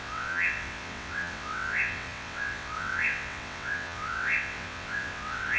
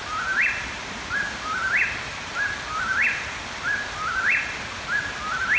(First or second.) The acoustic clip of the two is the second